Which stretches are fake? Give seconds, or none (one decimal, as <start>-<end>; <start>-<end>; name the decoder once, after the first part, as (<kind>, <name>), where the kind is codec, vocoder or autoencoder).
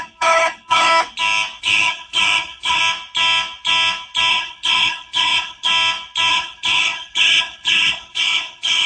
0.0-0.9 (codec, HILCodec); 1.6-2.8; 4.3-5.7; 6.3-8.9